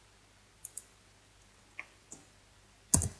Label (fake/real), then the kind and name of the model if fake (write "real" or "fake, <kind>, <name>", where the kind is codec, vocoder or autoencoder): real